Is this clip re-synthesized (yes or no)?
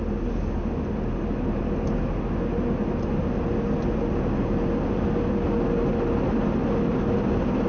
no